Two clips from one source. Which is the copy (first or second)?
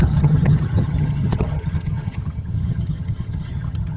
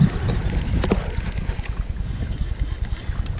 first